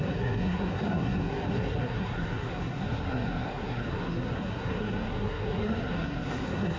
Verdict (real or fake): fake